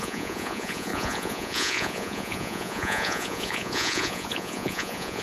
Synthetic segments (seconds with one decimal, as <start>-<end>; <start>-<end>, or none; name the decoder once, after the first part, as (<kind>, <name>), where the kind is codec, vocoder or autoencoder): 0.0-5.2 (vocoder, Vocos)